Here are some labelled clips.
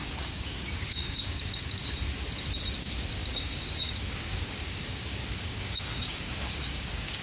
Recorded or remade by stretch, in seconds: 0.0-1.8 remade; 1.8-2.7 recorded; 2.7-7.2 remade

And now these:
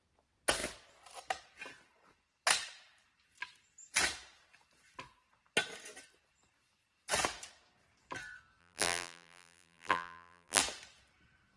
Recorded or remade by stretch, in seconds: 0.0-8.6 recorded; 8.6-10.6 remade; 10.6-11.6 recorded

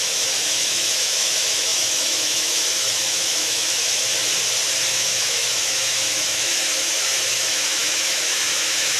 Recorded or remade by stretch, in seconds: 0.0-4.2 remade; 4.2-4.9 recorded; 4.9-9.0 remade

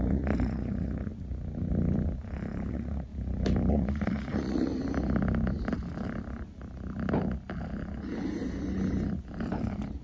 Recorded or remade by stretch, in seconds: 0.0-1.1 remade; 1.1-2.7 recorded; 2.7-3.1 remade; 3.1-3.7 recorded; 3.7-4.7 remade; 4.7-10.0 recorded

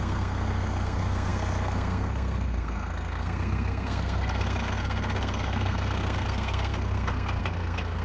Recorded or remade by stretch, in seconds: 0.0-8.0 remade

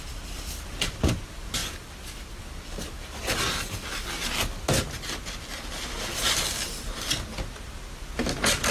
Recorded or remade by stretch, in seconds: 0.0-8.7 recorded

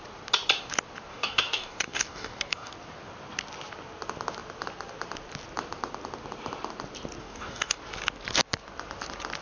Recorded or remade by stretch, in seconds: 0.0-1.1 recorded; 1.1-2.7 remade; 2.7-7.2 recorded; 7.2-7.8 remade; 7.8-9.4 recorded